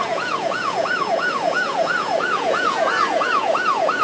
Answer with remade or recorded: remade